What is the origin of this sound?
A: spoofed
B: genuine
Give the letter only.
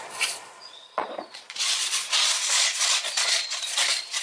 A